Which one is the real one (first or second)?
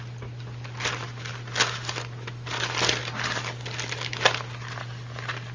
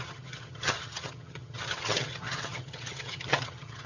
first